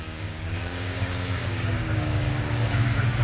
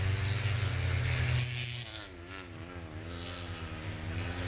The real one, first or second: second